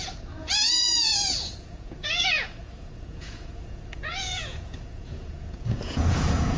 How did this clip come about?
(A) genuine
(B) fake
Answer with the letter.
B